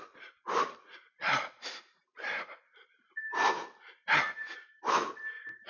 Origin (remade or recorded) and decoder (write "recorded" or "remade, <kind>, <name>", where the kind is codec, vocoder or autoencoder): recorded